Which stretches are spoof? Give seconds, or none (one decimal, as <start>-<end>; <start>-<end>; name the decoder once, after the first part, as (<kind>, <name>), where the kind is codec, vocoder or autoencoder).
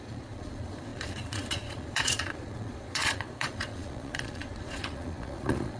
0.0-5.8 (vocoder, Vocos)